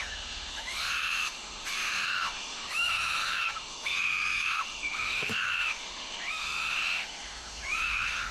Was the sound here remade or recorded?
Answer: remade